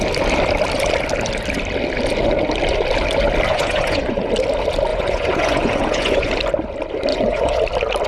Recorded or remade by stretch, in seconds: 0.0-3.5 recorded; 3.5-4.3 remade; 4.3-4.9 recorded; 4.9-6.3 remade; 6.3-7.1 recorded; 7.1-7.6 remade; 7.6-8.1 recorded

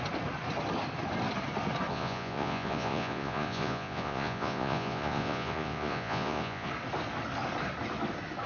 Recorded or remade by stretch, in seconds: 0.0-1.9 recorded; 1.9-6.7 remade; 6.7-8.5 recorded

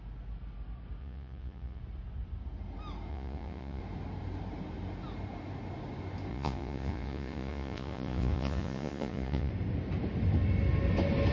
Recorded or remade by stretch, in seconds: 0.0-1.0 recorded; 1.0-1.8 remade; 1.8-3.1 recorded; 3.1-3.8 remade; 3.8-6.3 recorded; 6.3-9.5 remade; 9.5-11.3 recorded